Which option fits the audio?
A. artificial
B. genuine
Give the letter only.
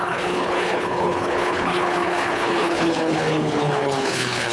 A